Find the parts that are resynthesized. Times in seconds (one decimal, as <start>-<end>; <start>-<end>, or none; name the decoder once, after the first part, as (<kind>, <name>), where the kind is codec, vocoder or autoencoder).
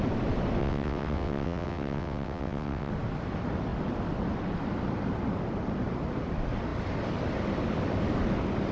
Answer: 0.6-2.9 (vocoder, WaveNeXt)